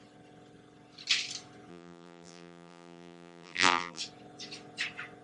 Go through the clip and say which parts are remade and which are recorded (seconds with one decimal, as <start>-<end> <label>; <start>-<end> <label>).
0.0-1.7 recorded; 1.7-4.0 remade; 4.0-5.2 recorded